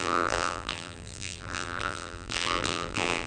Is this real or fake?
fake